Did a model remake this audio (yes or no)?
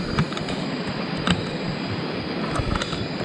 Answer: no